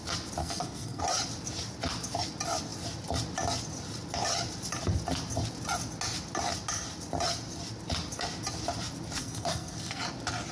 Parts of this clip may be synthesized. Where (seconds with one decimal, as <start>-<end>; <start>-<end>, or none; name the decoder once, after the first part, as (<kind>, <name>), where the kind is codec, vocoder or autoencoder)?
0.4-1.0 (codec, SNAC); 9.2-10.0